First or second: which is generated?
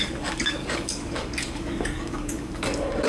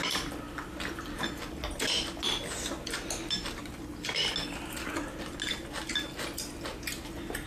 first